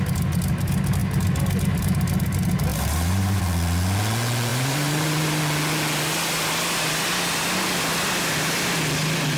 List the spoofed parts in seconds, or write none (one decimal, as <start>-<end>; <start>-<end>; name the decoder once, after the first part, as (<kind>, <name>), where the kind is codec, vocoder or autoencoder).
2.7-3.4 (vocoder, BigVGAN v2); 4.5-5.4